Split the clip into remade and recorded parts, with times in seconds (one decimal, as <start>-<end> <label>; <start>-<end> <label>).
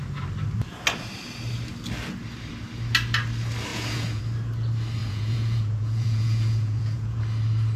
0.0-3.7 recorded; 3.7-4.2 remade; 4.2-5.0 recorded; 5.0-7.2 remade; 7.2-7.8 recorded